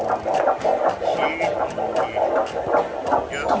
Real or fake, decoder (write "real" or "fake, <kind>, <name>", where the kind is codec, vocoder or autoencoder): real